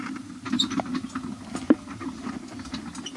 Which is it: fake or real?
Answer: real